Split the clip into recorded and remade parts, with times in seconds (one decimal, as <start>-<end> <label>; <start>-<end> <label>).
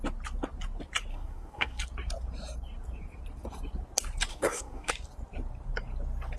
0.0-1.1 recorded; 1.1-1.8 remade; 1.8-4.3 recorded; 4.3-4.9 remade; 4.9-6.4 recorded